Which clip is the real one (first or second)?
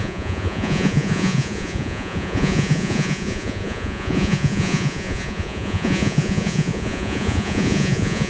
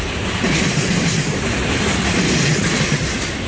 second